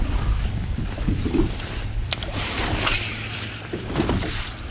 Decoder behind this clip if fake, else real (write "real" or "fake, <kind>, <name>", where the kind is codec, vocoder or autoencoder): fake, vocoder, BigVGAN v2